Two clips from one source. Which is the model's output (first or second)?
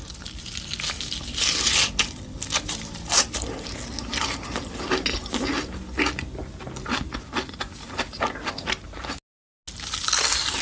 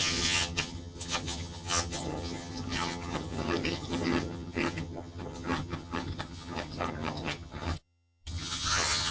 second